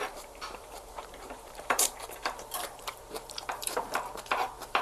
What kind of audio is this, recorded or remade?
remade